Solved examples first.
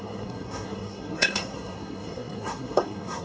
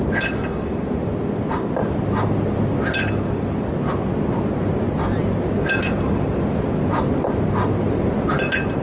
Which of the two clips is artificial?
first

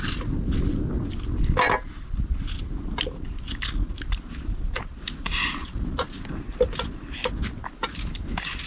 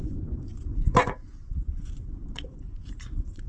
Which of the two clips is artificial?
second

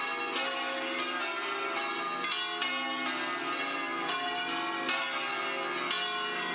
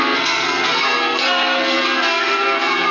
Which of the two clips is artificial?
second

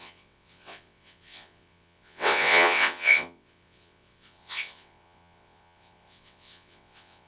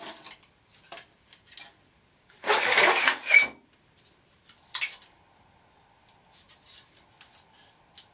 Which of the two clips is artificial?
first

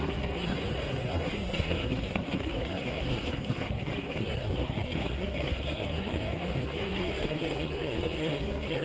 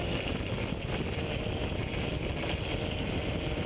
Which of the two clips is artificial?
first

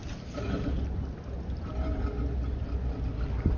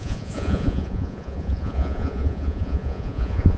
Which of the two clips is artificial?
second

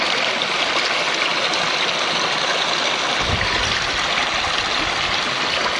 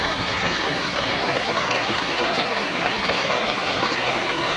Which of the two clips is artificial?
second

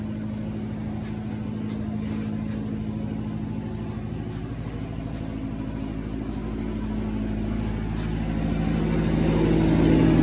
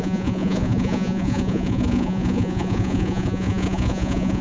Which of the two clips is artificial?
second